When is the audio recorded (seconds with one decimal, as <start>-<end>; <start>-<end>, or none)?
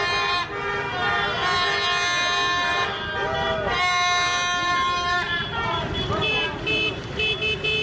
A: 0.0-7.8